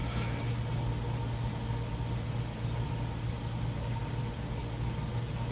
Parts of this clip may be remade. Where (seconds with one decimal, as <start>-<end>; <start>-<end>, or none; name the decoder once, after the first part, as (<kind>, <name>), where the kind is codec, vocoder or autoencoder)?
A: none

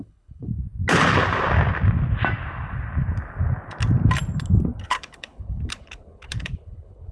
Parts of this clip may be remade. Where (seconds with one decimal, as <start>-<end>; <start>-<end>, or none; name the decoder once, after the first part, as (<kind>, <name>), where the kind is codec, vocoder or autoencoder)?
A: 0.0-0.5 (codec, HILCodec); 4.8-7.1

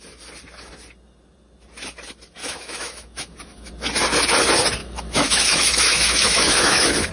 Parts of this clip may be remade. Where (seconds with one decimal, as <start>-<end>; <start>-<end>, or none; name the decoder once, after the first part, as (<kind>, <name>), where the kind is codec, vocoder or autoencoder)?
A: 2.4-3.7 (autoencoder, DAC-VAE); 4.8-7.1

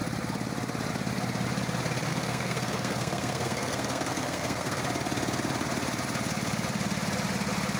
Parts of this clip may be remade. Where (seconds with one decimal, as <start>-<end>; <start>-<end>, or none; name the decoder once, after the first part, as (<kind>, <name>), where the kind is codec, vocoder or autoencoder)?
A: 2.1-4.8 (codec, SNAC)

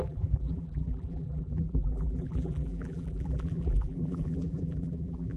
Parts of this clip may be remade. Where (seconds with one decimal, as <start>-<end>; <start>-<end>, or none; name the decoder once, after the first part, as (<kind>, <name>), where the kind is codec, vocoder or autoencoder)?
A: 0.0-5.4 (vocoder, BigVGAN v2)